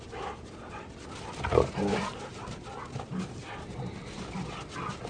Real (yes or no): yes